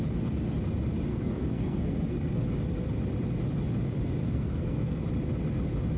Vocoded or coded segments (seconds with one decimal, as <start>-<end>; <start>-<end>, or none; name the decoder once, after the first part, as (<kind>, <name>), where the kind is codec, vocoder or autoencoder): 1.1-2.4 (codec, SNAC); 4.2-5.0